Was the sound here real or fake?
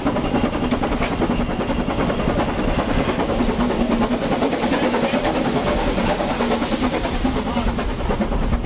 real